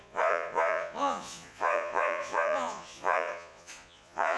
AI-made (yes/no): yes